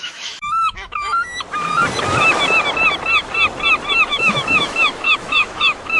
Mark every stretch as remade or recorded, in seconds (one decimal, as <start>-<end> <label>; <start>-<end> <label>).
0.0-1.3 remade; 1.3-4.1 recorded; 4.1-6.0 remade